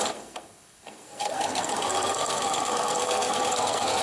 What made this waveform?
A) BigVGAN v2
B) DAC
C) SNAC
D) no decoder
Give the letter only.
C